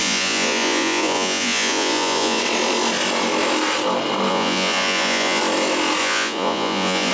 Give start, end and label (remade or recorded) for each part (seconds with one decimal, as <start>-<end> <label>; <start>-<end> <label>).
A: 0.0-2.4 remade; 2.4-4.3 recorded; 4.3-5.4 remade; 5.4-6.0 recorded; 6.0-7.1 remade